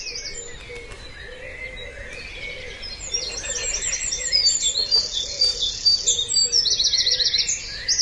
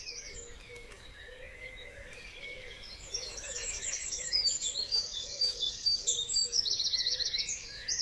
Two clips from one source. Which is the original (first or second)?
first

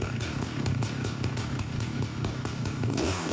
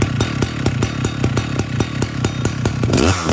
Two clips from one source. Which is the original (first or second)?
second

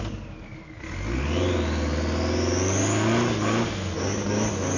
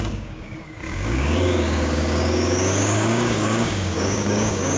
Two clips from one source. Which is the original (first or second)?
first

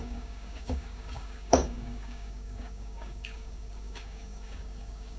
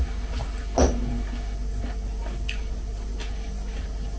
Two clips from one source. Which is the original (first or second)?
second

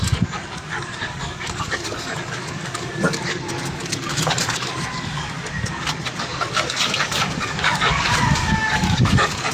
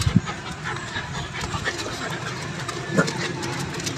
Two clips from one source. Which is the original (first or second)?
second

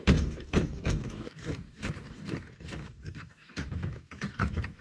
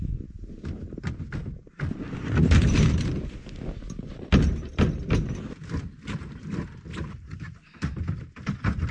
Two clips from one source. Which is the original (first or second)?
second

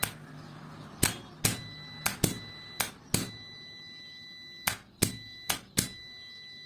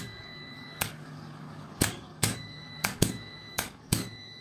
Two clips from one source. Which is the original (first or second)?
first